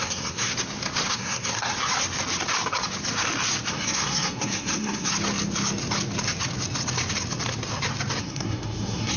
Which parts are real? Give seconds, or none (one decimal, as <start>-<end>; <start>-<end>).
0.5-1.1; 1.7-3.7; 5.1-8.2